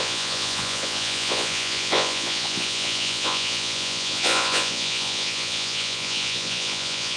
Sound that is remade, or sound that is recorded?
remade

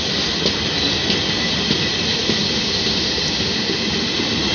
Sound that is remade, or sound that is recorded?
recorded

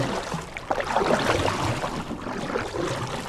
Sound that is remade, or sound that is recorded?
recorded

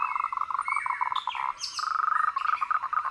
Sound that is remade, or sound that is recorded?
recorded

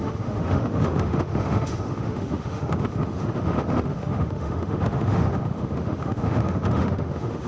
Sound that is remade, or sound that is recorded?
remade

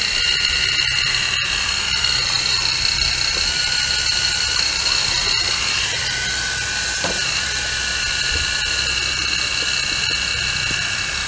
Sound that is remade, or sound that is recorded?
remade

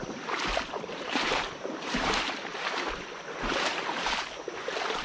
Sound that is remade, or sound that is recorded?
remade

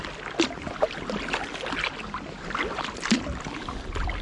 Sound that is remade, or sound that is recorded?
recorded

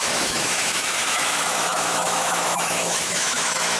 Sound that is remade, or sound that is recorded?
remade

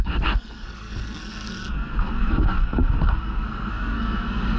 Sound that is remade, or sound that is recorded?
remade